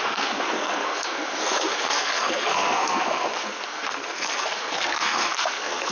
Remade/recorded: remade